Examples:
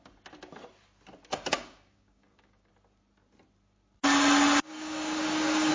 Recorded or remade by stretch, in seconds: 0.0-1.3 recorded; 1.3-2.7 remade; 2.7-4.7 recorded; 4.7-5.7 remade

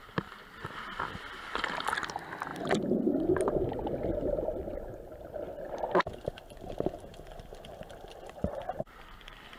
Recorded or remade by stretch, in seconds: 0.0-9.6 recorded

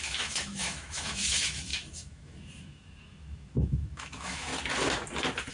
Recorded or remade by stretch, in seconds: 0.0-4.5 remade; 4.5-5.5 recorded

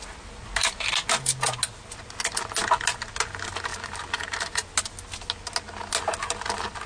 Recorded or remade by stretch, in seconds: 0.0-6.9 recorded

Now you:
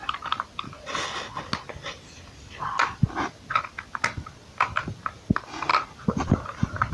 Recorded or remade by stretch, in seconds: 0.0-6.9 recorded

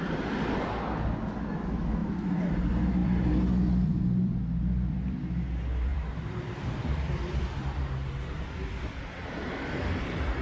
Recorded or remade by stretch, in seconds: 0.0-3.0 recorded; 3.0-5.2 remade; 5.2-5.9 recorded; 5.9-7.4 remade; 7.4-10.4 recorded

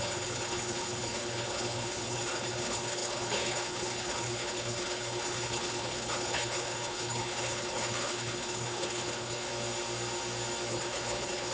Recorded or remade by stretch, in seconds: 0.0-9.5 remade; 9.5-10.7 recorded; 10.7-11.5 remade

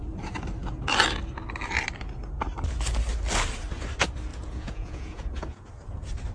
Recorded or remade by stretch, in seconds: 0.0-4.3 recorded; 4.3-5.7 remade; 5.7-6.3 recorded